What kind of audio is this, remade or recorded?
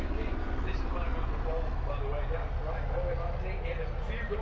recorded